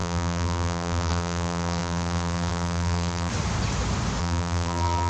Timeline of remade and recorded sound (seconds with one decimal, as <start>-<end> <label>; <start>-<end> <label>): 0.0-3.3 remade; 3.3-4.2 recorded; 4.2-5.1 remade